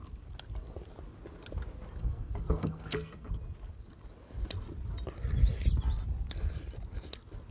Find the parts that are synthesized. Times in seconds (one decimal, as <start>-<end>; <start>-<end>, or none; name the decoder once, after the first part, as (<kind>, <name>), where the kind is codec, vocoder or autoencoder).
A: 2.0-3.3 (codec, SNAC)